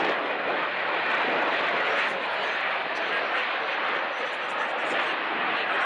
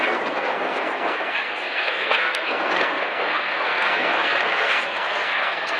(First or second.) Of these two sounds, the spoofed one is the second